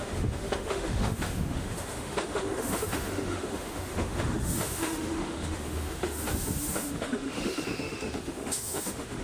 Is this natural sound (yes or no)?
no